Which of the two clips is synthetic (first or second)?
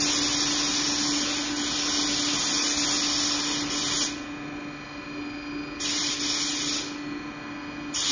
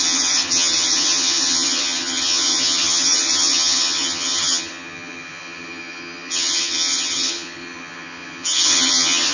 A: second